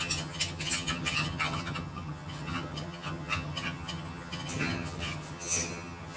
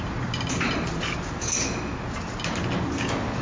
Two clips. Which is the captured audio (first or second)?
second